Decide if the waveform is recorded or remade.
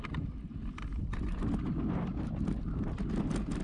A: recorded